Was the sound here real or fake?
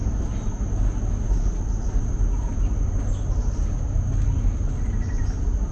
real